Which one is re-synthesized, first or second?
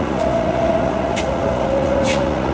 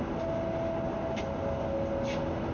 first